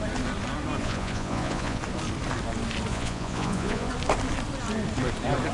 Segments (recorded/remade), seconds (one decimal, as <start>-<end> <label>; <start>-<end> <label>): 0.0-0.8 recorded; 0.8-1.8 remade; 1.8-2.9 recorded; 2.9-3.9 remade; 3.9-5.5 recorded